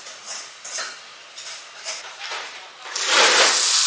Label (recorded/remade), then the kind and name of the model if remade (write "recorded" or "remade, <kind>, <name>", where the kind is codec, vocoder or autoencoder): recorded